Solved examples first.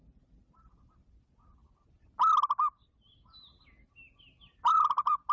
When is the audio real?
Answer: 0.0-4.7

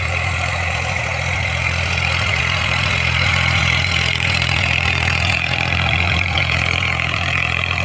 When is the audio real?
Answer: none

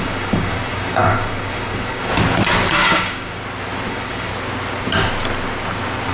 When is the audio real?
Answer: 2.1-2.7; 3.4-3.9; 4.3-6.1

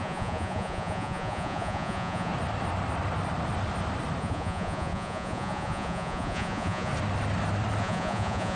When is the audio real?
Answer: 2.3-4.2; 6.9-7.8

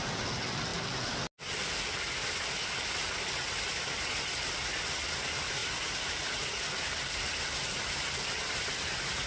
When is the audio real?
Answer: 0.0-9.3

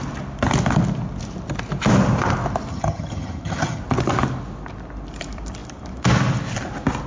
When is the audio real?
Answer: 0.0-2.7; 3.8-7.1

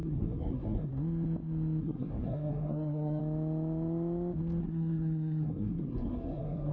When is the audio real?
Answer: 0.9-1.8; 3.2-4.6

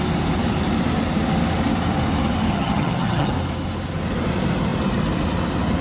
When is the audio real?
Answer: 0.0-2.5; 3.3-5.8